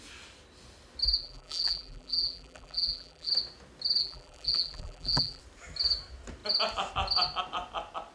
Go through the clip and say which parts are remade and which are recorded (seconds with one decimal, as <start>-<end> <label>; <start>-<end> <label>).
0.0-1.2 recorded; 1.2-3.3 remade; 3.3-4.0 recorded; 4.0-5.4 remade; 5.4-8.1 recorded